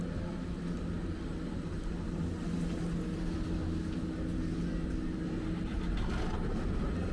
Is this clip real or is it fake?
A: real